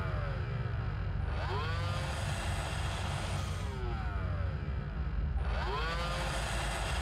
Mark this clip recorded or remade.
recorded